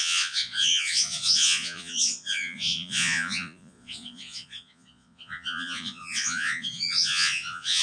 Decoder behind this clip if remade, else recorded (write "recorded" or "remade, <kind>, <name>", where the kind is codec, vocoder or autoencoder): remade, vocoder, Vocos